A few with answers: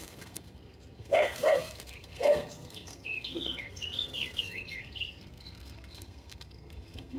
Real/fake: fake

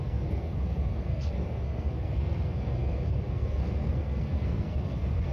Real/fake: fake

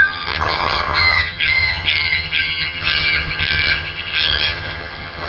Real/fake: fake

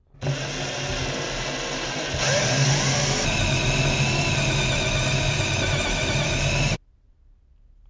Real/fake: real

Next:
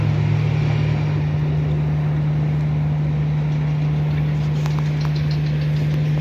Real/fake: real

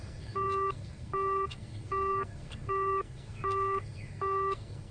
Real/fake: fake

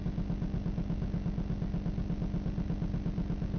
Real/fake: real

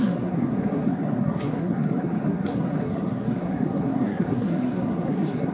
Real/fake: fake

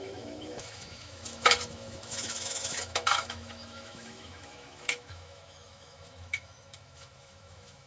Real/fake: fake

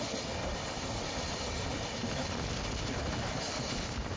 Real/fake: real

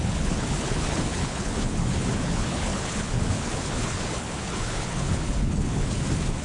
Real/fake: fake